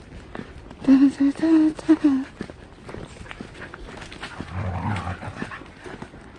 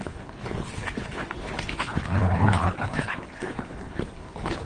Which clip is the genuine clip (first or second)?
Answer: first